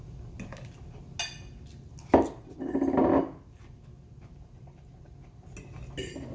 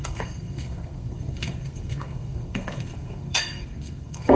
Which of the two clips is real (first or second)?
first